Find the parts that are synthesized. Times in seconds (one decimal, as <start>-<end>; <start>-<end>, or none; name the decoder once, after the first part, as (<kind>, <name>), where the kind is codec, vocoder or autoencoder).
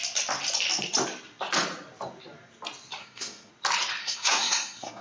3.0-3.5 (codec, SNAC); 4.0-5.0